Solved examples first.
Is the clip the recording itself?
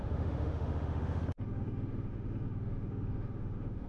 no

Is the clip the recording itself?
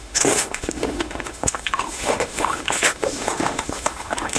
no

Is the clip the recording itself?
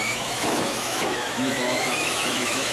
no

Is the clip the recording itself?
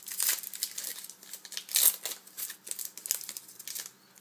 yes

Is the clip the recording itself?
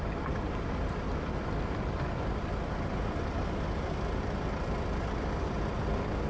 yes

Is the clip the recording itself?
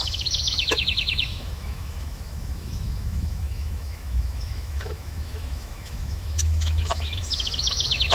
no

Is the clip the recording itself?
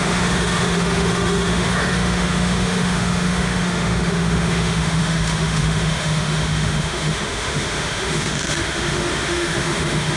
no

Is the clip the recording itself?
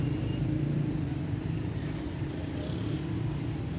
yes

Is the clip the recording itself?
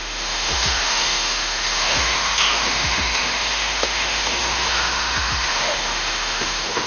no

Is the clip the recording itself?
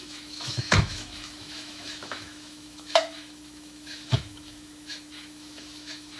no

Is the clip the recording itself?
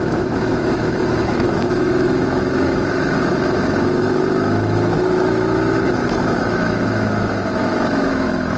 no